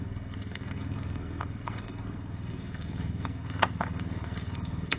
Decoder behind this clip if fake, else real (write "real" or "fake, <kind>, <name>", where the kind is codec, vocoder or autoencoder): fake, codec, SNAC